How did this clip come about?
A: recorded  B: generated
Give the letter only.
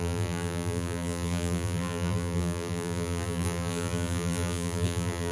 B